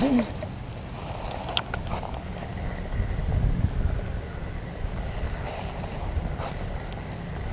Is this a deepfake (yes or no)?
no